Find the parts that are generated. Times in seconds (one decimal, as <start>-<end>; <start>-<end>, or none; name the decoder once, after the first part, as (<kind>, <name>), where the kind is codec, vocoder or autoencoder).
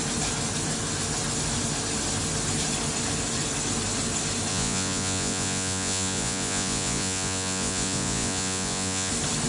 4.5-9.1 (vocoder, Vocos)